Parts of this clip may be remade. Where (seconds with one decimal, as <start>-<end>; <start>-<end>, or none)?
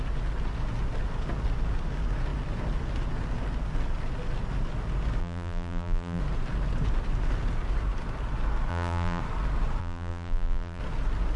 5.2-6.2; 8.7-9.2; 9.8-10.8